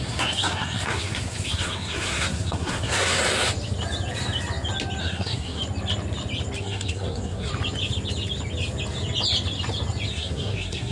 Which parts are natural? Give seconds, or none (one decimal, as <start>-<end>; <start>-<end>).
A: 3.2-5.0; 5.6-6.6; 7.5-10.1